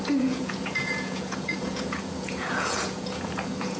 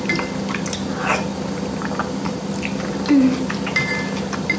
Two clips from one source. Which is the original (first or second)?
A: second